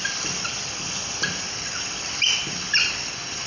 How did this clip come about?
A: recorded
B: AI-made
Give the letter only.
A